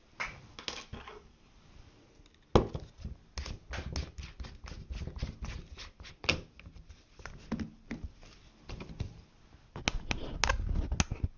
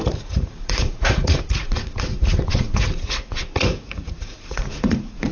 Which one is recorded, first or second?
first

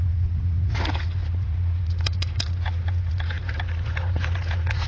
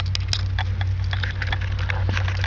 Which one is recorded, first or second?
second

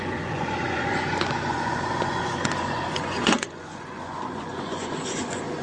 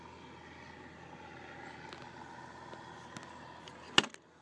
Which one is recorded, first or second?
second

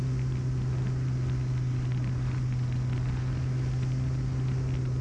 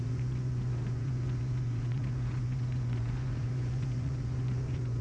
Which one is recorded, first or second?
first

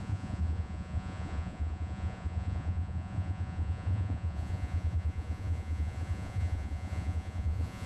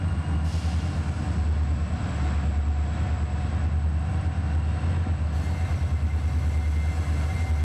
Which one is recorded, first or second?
second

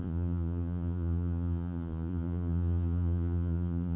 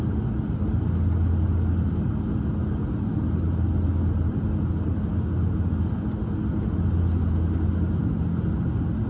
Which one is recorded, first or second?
second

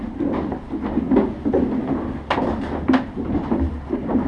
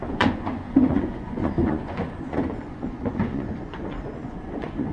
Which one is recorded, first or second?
first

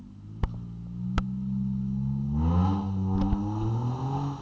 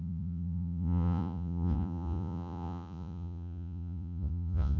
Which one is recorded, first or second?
first